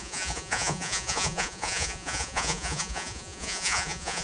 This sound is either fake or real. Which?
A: fake